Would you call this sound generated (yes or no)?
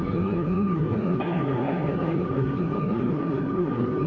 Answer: yes